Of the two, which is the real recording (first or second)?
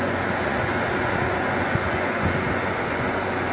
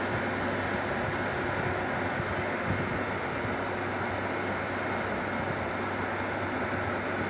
second